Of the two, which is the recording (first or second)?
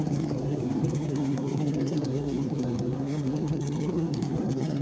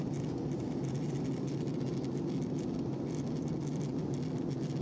second